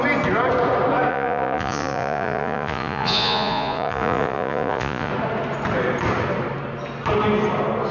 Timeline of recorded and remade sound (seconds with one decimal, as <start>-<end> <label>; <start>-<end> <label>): 0.0-1.1 recorded; 1.1-5.1 remade; 5.1-7.9 recorded